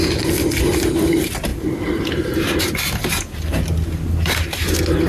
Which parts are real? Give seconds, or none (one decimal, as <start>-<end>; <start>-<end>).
0.0-5.1

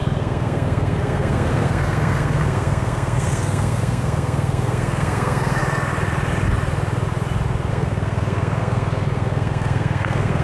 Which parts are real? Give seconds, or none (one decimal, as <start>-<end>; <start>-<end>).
5.6-7.7

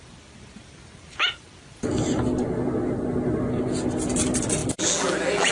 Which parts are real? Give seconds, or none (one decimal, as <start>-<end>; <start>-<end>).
0.0-4.6

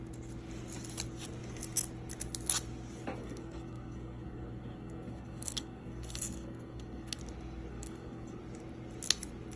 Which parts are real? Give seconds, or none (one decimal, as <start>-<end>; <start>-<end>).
0.0-3.2; 7.2-7.7; 8.4-9.6